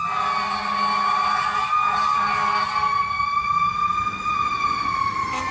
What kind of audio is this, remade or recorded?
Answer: recorded